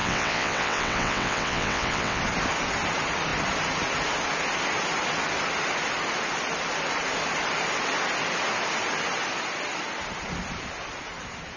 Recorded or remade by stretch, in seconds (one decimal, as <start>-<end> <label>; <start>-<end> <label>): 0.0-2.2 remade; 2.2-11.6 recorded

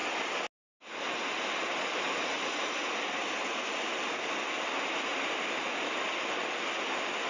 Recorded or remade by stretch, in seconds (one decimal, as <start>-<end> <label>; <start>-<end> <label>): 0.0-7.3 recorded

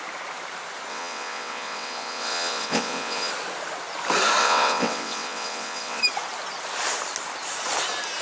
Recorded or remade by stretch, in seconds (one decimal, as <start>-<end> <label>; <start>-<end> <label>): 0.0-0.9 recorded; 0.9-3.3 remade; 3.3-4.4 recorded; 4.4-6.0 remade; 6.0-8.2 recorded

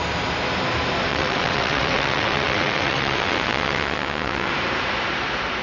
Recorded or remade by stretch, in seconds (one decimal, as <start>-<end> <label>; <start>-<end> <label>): 0.0-1.1 recorded; 1.1-4.5 remade; 4.5-5.6 recorded

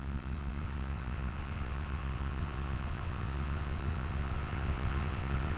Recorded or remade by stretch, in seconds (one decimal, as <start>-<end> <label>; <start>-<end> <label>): 0.0-5.6 remade

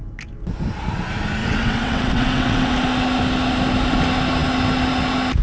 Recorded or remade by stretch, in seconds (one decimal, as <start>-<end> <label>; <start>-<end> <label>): 0.0-1.4 recorded; 1.4-2.7 remade; 2.7-5.4 recorded

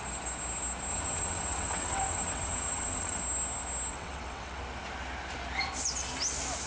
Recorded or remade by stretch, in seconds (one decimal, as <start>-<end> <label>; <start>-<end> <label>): 0.0-0.9 recorded; 0.9-3.2 remade; 3.2-3.9 recorded; 3.9-4.6 remade; 4.6-6.7 recorded

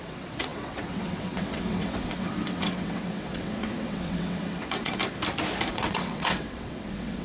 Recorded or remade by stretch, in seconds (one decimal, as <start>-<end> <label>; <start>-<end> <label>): 0.0-5.0 remade; 5.0-5.7 recorded; 5.7-7.2 remade